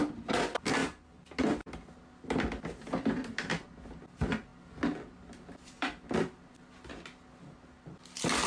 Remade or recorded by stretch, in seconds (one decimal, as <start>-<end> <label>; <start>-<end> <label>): 0.0-8.5 recorded